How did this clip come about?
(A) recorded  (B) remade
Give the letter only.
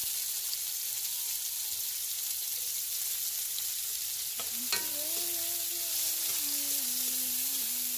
A